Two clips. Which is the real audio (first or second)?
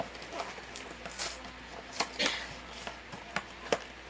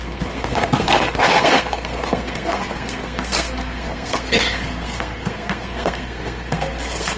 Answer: first